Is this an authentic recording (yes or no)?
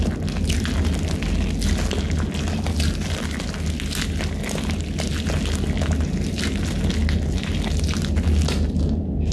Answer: yes